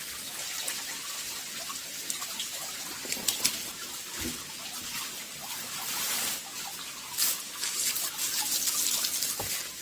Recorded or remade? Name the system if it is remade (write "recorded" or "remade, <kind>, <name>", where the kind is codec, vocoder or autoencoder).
recorded